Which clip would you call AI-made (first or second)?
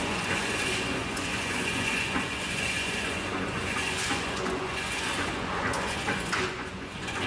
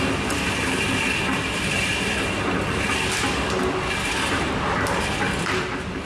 first